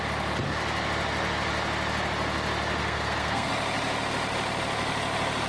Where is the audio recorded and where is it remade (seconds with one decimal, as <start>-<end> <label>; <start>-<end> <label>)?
0.0-2.8 recorded; 2.8-3.5 remade; 3.5-5.5 recorded